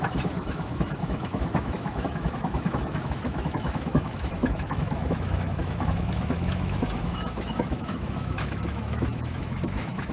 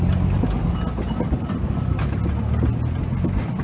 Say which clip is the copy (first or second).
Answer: first